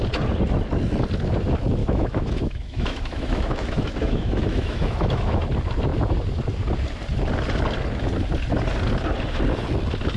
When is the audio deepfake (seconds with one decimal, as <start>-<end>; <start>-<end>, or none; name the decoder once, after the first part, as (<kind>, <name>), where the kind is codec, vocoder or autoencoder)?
1.8-5.4 (autoencoder, DAC-VAE)